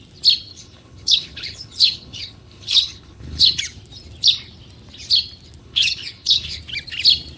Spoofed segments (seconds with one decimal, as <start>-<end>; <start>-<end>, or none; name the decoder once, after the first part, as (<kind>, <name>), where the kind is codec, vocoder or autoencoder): 0.5-3.6 (codec, HILCodec); 5.6-6.6